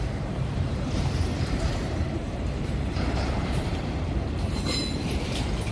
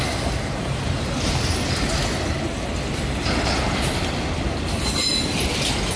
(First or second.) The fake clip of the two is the first